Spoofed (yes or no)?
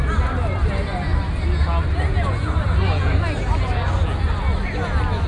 no